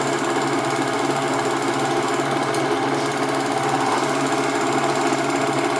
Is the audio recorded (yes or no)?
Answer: yes